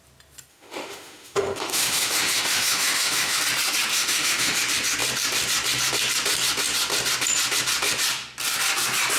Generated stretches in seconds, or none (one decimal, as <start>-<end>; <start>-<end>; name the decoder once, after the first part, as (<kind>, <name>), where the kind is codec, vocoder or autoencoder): 0.5-3.4 (autoencoder, DAC-VAE); 3.9-4.6